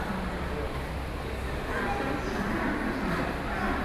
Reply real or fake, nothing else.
real